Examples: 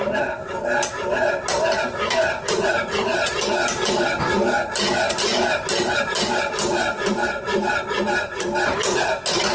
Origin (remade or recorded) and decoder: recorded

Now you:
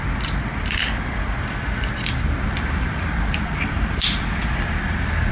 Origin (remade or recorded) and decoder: remade, vocoder, BigVGAN v2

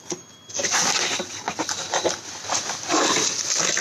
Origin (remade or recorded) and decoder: recorded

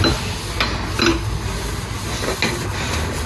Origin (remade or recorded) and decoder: recorded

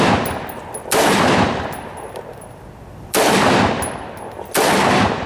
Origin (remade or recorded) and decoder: remade, vocoder, BigVGAN v2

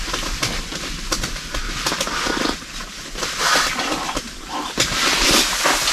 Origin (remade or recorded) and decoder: recorded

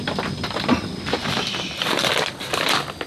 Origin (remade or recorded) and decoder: recorded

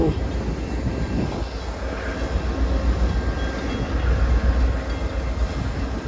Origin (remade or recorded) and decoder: recorded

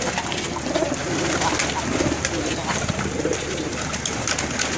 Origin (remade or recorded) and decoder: recorded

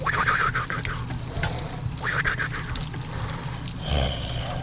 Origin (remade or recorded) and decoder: recorded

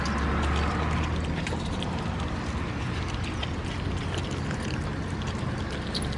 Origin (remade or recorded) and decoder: recorded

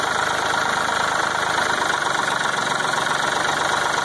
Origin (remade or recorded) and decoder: remade, vocoder, BigVGAN v2